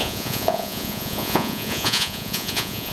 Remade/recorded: remade